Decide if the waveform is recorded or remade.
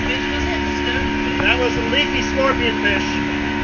recorded